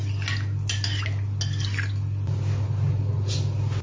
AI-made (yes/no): no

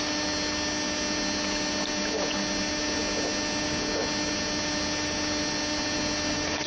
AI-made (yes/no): no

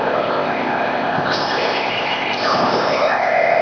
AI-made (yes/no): yes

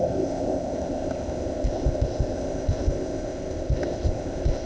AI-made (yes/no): yes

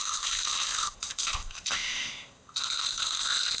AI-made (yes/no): yes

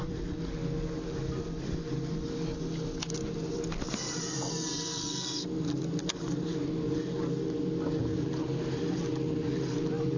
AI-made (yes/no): no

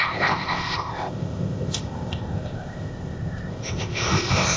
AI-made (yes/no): yes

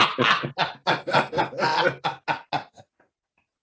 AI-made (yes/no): no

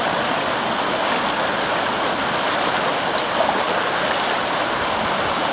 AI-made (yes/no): no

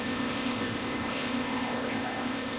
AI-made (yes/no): yes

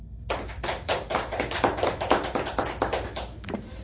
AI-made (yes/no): no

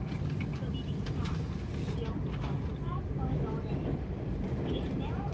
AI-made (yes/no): no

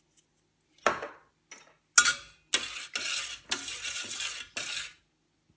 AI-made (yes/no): no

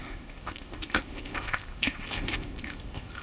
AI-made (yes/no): yes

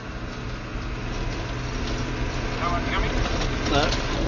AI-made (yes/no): no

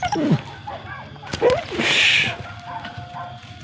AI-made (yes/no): no